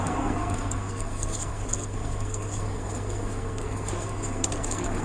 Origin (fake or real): fake